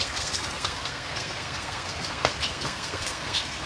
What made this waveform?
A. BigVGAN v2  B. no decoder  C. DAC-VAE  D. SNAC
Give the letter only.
D